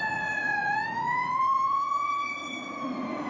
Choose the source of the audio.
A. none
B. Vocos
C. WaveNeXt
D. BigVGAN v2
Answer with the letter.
B